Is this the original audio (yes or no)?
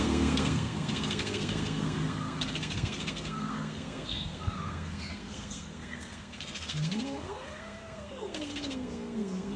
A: no